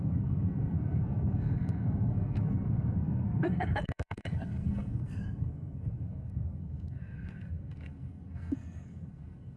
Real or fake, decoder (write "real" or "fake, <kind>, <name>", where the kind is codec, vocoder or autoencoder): fake, codec, SNAC